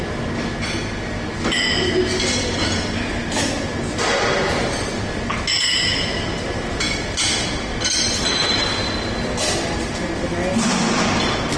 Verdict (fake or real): real